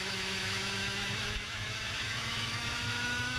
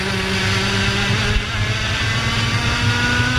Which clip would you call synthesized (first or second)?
first